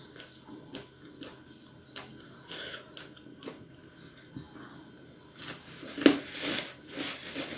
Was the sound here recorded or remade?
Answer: recorded